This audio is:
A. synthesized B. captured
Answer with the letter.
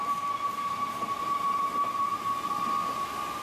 B